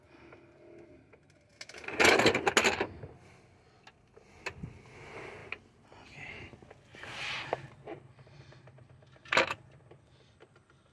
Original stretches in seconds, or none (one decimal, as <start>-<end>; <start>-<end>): 0.0-5.4; 6.3-6.9; 8.9-10.9